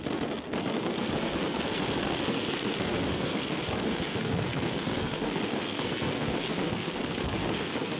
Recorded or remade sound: remade